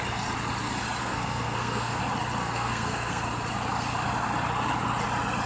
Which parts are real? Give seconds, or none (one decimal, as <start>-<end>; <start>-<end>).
0.0-1.0; 2.0-2.4; 3.2-5.5